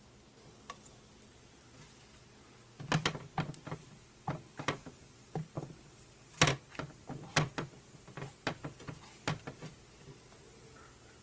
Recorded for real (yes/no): yes